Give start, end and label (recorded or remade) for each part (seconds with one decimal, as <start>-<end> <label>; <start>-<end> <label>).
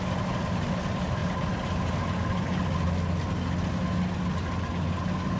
0.0-5.4 recorded